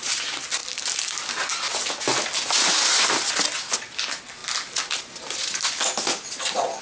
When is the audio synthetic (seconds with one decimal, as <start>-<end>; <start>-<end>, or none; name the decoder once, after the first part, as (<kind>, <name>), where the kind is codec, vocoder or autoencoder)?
none